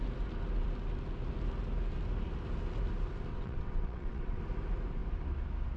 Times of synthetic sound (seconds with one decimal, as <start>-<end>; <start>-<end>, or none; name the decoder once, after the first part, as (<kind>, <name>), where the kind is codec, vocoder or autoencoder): 3.3-4.4 (vocoder, WaveNeXt)